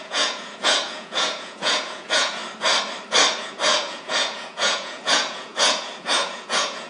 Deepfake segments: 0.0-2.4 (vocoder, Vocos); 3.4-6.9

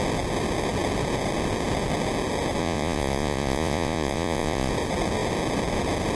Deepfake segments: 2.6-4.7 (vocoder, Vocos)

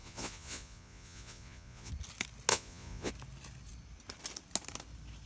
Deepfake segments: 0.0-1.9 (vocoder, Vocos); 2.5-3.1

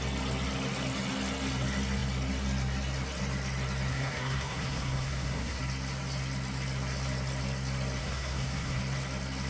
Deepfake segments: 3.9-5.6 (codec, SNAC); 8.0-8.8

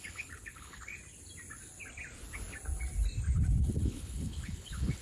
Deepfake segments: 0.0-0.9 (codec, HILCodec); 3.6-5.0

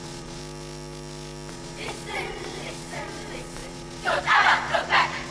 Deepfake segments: 0.0-0.4 (vocoder, Vocos); 1.5-5.3

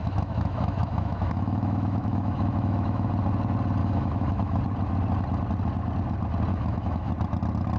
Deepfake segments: 0.0-3.1 (autoencoder, DAC-VAE); 3.8-4.6; 6.5-7.1